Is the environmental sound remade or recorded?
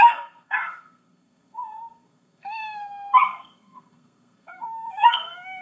remade